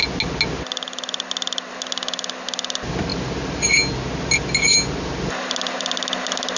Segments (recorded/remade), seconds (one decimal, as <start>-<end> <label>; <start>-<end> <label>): 0.0-6.6 recorded